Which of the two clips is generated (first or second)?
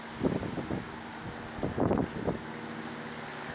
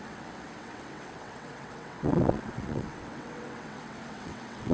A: second